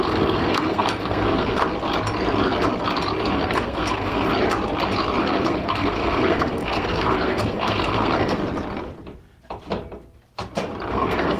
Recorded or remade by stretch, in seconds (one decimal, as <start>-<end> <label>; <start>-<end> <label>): 0.0-1.6 remade; 1.6-3.3 recorded; 3.3-4.3 remade; 4.3-5.2 recorded; 5.2-8.4 remade; 8.4-10.9 recorded; 10.9-11.4 remade